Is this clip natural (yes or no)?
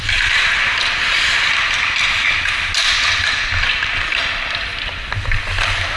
yes